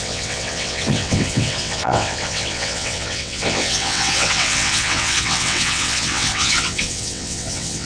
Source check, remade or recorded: remade